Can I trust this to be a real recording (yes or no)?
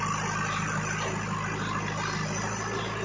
yes